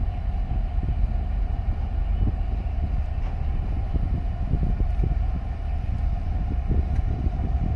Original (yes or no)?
yes